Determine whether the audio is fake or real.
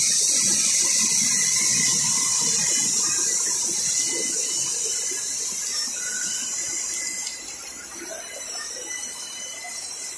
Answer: real